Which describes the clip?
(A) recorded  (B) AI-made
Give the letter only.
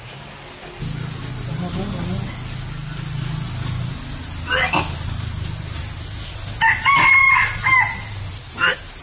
A